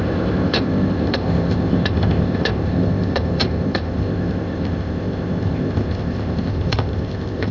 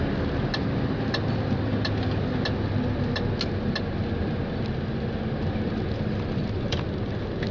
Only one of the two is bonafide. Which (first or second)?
second